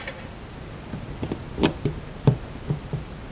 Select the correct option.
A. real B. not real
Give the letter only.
A